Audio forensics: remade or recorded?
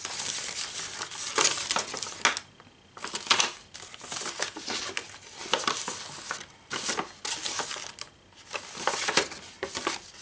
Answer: recorded